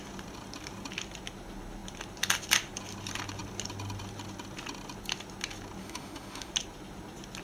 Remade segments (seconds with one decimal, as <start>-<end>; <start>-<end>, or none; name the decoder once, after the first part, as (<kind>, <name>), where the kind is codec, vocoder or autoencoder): 5.8-6.5 (autoencoder, DAC-VAE)